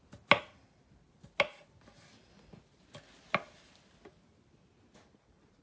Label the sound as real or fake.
real